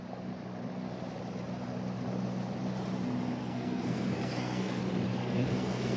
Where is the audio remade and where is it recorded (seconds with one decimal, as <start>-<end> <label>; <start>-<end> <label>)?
0.0-3.4 recorded; 3.4-4.8 remade; 4.8-5.2 recorded; 5.2-6.0 remade